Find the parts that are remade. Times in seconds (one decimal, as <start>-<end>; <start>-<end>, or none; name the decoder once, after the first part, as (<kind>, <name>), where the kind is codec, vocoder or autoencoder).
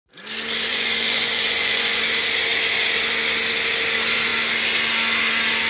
0.7-2.0 (vocoder, Vocos)